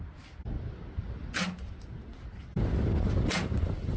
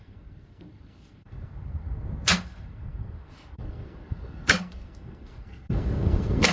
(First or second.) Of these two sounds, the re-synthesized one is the second